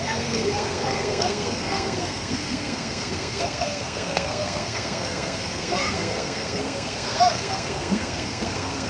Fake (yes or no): yes